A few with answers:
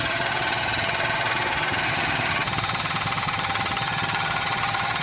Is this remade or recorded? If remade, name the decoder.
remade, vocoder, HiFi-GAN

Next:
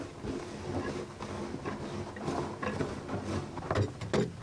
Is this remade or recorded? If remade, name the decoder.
recorded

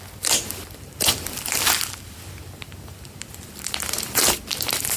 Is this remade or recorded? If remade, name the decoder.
recorded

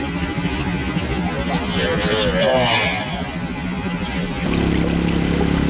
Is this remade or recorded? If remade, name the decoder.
recorded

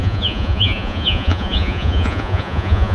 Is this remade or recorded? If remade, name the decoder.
remade, vocoder, Vocos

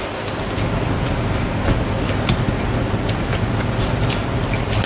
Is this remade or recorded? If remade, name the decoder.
recorded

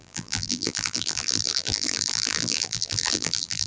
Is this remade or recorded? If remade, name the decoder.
remade, vocoder, BigVGAN v2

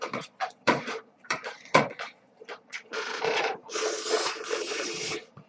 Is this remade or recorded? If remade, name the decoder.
remade, vocoder, Vocos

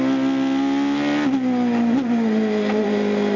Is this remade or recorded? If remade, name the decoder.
recorded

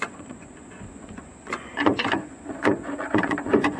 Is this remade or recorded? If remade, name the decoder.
remade, vocoder, Vocos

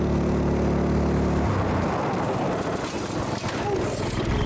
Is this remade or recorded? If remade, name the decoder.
recorded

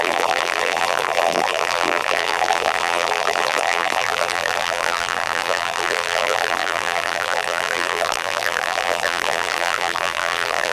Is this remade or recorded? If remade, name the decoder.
remade, vocoder, BigVGAN v2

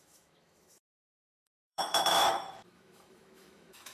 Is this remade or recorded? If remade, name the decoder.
remade, autoencoder, DAC-VAE